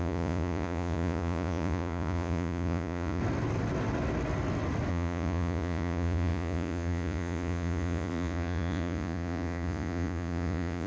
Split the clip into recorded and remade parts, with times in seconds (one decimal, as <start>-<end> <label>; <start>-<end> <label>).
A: 0.0-3.2 remade; 3.2-4.9 recorded; 4.9-10.9 remade

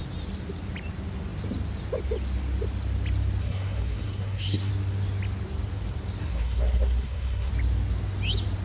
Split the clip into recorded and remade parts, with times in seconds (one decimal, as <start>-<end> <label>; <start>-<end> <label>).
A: 0.0-3.4 recorded; 3.4-4.7 remade; 4.7-6.2 recorded; 6.2-7.5 remade; 7.5-8.6 recorded

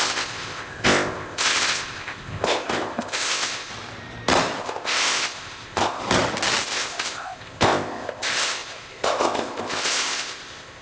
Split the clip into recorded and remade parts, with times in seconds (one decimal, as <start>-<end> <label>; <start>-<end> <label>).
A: 0.0-3.7 remade; 3.7-4.6 recorded; 4.6-6.0 remade; 6.0-6.6 recorded; 6.6-10.8 remade

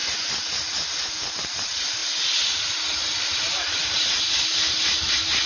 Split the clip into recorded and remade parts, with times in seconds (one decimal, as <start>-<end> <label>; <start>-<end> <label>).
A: 0.0-5.5 recorded

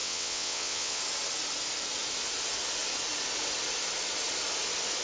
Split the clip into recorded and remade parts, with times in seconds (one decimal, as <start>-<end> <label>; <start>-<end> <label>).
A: 0.0-1.0 remade; 1.0-5.0 recorded

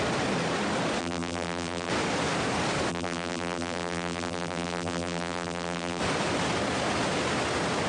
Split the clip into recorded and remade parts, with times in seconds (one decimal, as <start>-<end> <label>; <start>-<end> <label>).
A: 0.0-1.0 recorded; 1.0-1.9 remade; 1.9-2.9 recorded; 2.9-6.0 remade; 6.0-7.9 recorded